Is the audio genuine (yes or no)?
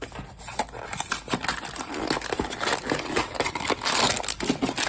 yes